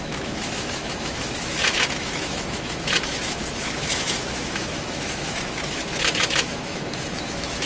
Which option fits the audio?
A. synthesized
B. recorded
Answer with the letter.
A